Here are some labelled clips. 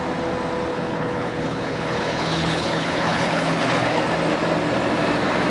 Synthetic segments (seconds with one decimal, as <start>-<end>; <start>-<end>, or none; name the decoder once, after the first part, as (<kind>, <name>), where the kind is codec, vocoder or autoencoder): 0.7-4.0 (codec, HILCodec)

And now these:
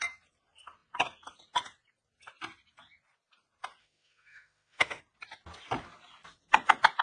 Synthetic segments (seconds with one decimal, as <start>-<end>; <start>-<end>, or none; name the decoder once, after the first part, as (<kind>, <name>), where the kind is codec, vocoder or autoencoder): 3.8-5.0 (autoencoder, DAC-VAE)

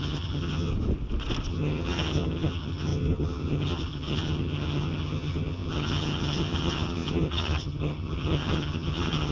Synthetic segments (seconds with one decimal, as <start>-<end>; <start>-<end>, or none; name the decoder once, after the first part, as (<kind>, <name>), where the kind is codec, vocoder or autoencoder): 0.0-0.7 (vocoder, HiFi-GAN); 1.5-9.3

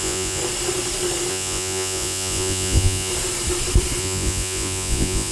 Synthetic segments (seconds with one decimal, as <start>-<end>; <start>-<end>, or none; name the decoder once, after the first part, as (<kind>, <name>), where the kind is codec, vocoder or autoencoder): 0.0-0.4 (vocoder, Vocos); 1.3-3.1; 4.0-5.3

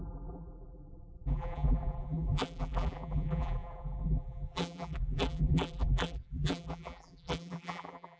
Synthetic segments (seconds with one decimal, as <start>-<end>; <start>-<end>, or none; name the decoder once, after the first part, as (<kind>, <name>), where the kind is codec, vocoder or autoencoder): 0.0-8.2 (vocoder, BigVGAN v2)

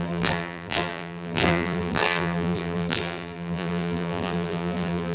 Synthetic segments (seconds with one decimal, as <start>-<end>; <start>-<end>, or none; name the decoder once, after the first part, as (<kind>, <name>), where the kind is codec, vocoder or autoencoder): 0.0-5.1 (vocoder, BigVGAN v2)